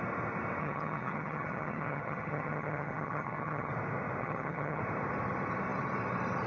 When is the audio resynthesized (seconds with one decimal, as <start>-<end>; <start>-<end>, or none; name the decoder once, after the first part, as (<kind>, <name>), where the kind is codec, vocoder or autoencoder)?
0.6-3.7 (vocoder, HiFi-GAN); 4.2-4.8